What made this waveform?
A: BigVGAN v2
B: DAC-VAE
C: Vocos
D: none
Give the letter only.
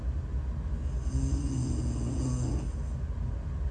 D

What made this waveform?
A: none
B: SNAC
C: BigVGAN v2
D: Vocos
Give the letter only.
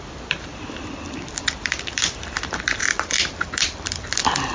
C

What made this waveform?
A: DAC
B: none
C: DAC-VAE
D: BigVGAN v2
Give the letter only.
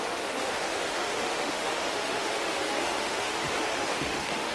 C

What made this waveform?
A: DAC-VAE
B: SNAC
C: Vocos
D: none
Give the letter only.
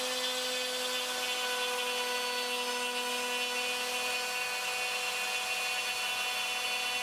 D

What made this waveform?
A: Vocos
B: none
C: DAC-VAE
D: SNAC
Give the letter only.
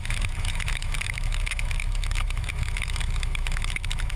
C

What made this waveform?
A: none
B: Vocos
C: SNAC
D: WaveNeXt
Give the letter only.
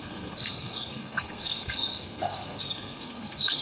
C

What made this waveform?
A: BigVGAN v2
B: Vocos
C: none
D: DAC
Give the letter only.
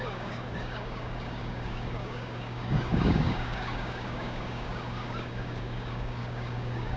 D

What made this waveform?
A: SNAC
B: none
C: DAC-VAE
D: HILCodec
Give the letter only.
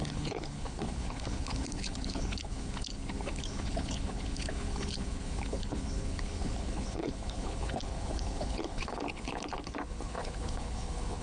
D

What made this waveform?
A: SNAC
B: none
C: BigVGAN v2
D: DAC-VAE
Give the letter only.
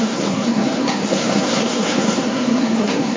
A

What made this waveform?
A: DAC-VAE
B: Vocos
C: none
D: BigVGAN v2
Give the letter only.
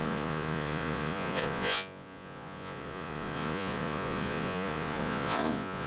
B